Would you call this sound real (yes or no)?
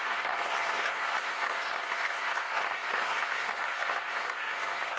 no